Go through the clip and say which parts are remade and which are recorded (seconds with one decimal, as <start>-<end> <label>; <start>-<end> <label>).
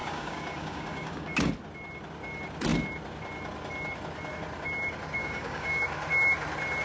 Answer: 0.0-1.5 remade; 1.5-5.2 recorded; 5.2-5.8 remade; 5.8-6.8 recorded